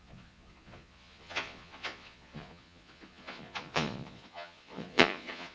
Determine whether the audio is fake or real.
fake